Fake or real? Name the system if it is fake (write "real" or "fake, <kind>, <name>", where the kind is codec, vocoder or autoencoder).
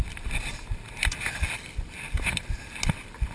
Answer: real